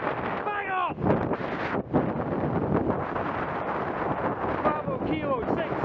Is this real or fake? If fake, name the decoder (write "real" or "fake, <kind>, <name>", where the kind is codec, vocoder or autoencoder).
real